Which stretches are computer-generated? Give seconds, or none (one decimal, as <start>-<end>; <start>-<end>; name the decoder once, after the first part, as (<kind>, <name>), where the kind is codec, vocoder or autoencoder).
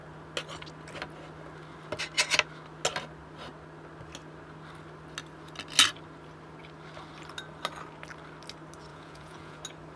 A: 8.9-9.6 (vocoder, Vocos)